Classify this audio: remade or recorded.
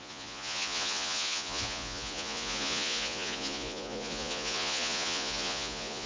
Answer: remade